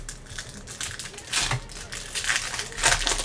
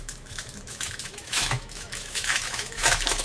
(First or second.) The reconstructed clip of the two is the second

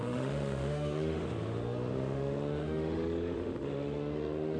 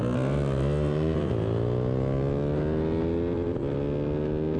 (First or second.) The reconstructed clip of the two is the first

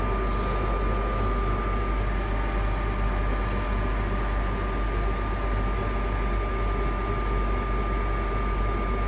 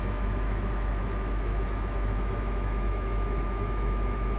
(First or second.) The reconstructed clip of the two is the second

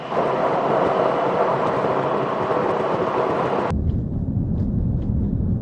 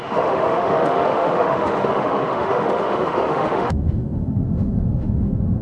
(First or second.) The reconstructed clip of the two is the second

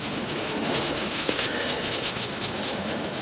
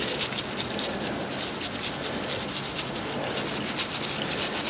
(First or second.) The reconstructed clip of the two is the first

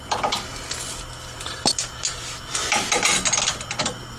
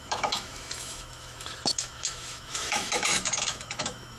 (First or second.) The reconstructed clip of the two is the second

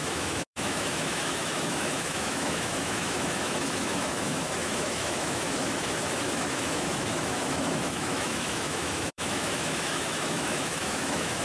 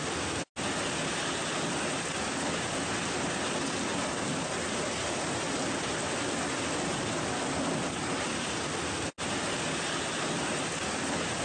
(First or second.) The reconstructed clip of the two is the first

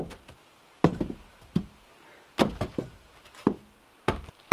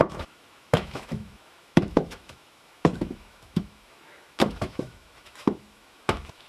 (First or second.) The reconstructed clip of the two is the second